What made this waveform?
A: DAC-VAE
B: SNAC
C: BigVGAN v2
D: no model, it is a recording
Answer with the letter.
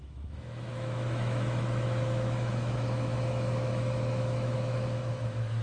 A